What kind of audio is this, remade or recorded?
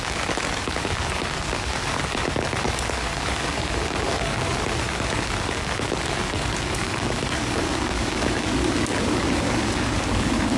remade